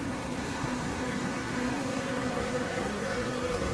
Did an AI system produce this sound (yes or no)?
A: yes